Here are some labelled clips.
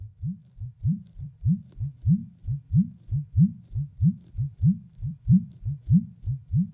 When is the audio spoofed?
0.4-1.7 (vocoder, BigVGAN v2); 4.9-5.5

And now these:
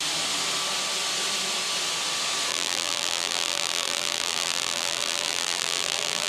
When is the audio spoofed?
2.5-6.3 (vocoder, BigVGAN v2)

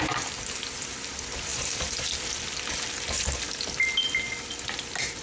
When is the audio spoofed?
none

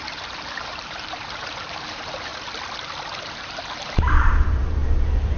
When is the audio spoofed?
0.0-2.3 (vocoder, BigVGAN v2); 3.2-4.8